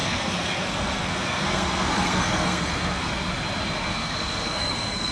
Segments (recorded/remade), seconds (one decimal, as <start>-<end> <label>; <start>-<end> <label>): 0.0-3.1 remade; 3.1-3.9 recorded; 3.9-5.1 remade